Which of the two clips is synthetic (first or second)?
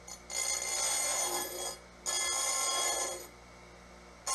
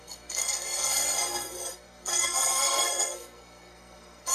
second